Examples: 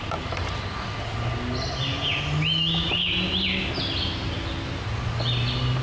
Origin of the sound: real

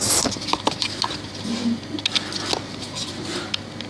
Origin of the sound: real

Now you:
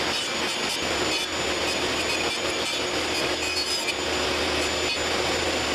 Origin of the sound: real